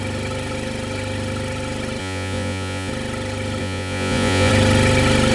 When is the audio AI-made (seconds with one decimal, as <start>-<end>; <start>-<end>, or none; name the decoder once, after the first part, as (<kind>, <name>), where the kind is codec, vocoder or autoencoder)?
2.0-2.9 (vocoder, Vocos); 3.6-4.5